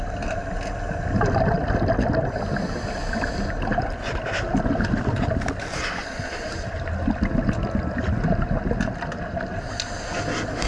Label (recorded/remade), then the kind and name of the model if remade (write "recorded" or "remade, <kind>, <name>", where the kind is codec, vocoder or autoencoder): recorded